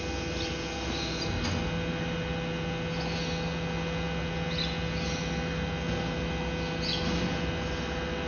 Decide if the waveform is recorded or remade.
recorded